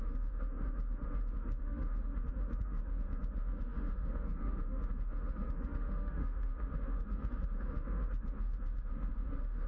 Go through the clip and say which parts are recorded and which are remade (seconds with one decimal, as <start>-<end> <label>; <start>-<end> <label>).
0.0-9.7 remade